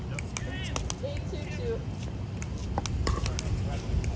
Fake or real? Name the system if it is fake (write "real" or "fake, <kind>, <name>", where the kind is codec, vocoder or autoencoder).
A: real